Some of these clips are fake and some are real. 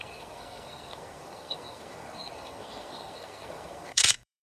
fake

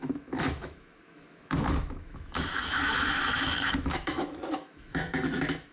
fake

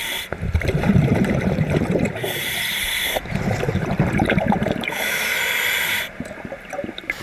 fake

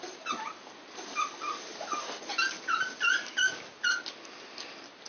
real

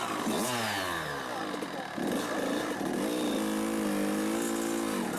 real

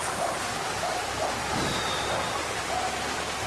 real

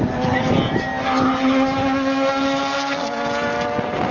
real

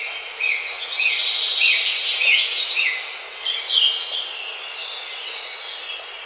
fake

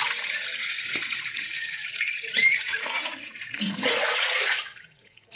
fake